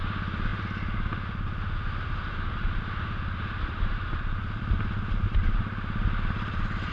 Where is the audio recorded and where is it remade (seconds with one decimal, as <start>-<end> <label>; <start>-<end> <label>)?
0.0-6.9 recorded